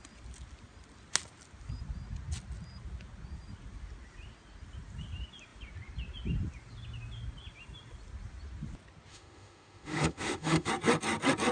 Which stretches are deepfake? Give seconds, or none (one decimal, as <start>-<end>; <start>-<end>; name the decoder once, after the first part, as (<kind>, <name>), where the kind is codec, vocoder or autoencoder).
9.1-10.7 (autoencoder, DAC-VAE)